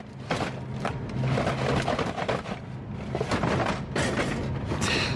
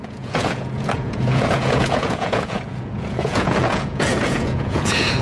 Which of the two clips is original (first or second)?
first